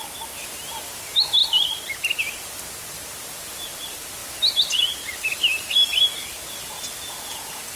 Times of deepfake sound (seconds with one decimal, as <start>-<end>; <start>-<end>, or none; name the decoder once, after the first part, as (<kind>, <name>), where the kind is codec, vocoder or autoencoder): none

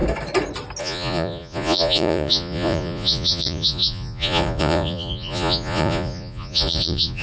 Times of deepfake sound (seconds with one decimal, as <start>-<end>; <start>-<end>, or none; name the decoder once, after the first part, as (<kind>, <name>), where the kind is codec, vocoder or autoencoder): 0.8-7.2 (vocoder, Vocos)

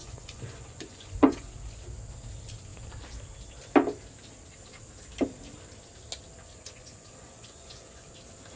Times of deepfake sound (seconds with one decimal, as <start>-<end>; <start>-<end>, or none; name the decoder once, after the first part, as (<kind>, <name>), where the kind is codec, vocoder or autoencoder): 0.0-1.5 (vocoder, Vocos); 6.4-8.1

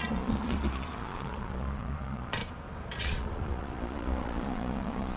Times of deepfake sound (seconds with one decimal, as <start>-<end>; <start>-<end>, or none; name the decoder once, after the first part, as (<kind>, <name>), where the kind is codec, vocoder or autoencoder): 0.0-2.4 (vocoder, Vocos); 3.0-5.2

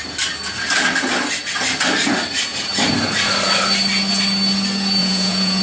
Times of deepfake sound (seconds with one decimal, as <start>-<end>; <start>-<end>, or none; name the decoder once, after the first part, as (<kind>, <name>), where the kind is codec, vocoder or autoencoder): 5.0-5.6 (vocoder, Vocos)

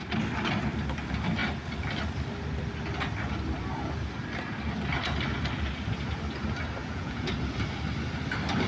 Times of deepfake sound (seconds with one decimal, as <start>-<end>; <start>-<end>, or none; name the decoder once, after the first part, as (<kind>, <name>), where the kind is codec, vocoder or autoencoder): 6.8-7.3 (vocoder, Vocos)

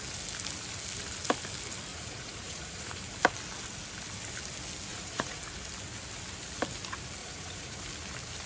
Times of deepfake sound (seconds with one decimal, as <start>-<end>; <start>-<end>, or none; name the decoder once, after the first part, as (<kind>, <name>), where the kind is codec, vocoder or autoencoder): 1.9-3.0 (vocoder, Vocos); 4.9-5.4; 7.2-7.8

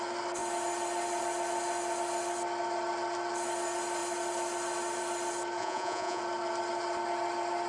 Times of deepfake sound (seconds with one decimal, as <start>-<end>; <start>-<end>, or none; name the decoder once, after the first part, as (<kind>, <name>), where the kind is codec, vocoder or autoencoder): 5.6-6.2 (vocoder, Vocos)